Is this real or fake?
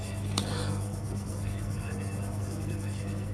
fake